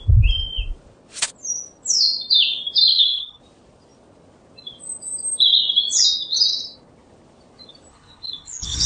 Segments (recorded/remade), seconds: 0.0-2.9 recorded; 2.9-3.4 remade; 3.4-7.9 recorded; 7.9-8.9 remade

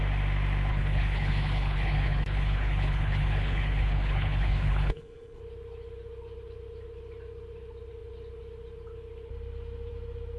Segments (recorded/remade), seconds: 0.0-0.7 recorded; 0.7-5.4 remade; 5.4-10.4 recorded

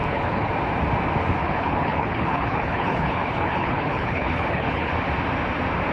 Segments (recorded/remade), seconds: 0.0-0.5 remade; 0.5-1.4 recorded; 1.4-4.9 remade; 4.9-5.9 recorded

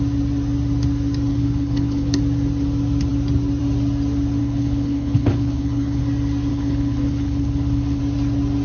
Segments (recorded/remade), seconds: 0.0-1.3 recorded; 1.3-2.2 remade; 2.2-4.4 recorded; 4.4-6.0 remade; 6.0-6.5 recorded; 6.5-8.0 remade; 8.0-8.6 recorded

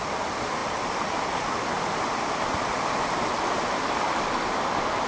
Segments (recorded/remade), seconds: 0.0-5.1 recorded

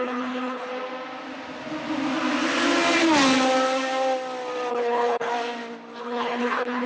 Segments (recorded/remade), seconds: 0.0-0.7 remade; 0.7-4.7 recorded; 4.7-5.3 remade; 5.3-6.0 recorded; 6.0-6.9 remade

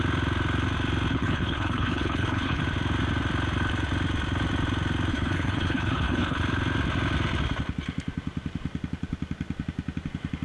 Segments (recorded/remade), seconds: 0.0-1.1 recorded; 1.1-2.6 remade; 2.6-5.1 recorded; 5.1-6.4 remade; 6.4-10.4 recorded

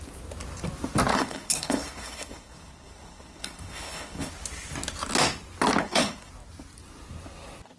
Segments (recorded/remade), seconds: 0.0-1.1 recorded; 1.1-4.3 remade; 4.3-5.8 recorded; 5.8-6.3 remade; 6.3-7.8 recorded